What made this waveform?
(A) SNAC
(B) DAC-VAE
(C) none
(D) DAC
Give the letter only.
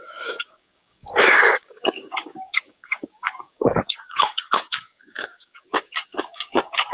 D